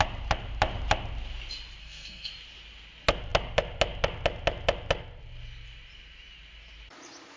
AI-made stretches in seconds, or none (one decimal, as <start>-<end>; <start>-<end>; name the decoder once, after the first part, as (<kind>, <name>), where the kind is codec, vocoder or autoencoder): 1.8-2.3 (codec, SNAC)